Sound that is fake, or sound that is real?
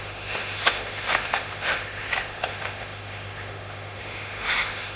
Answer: fake